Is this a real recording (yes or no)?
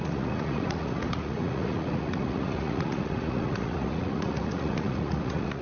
no